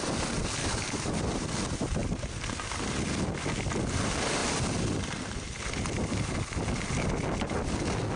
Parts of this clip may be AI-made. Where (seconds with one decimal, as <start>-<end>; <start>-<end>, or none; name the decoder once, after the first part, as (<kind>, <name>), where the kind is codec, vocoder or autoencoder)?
0.6-1.2 (codec, DAC)